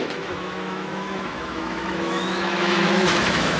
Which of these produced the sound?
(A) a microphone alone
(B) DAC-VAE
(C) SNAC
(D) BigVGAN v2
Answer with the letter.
B